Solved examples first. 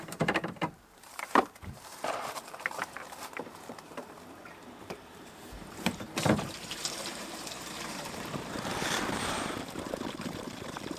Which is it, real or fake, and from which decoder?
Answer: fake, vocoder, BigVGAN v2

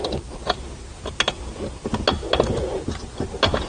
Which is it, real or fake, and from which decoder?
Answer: real